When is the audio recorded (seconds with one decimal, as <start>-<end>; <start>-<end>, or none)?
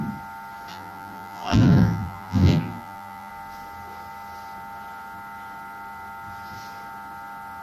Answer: 0.0-0.7; 3.3-7.6